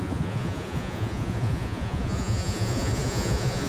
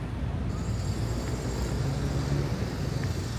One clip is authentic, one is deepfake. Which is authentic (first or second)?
second